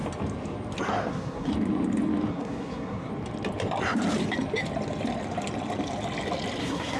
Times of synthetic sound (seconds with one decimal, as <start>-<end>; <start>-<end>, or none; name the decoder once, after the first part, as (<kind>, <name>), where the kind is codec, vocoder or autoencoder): 1.1-1.5 (codec, SNAC); 2.3-3.1; 6.6-7.0